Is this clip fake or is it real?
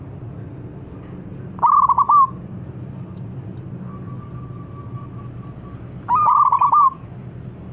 real